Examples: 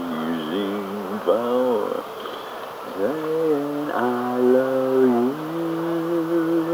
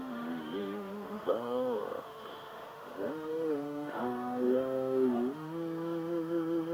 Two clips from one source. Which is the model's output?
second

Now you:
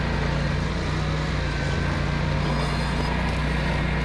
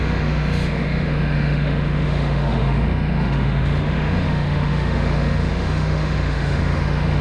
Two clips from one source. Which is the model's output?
second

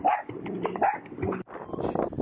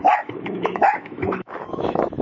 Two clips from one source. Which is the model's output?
second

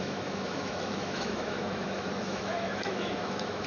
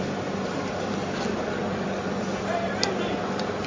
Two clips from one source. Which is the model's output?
first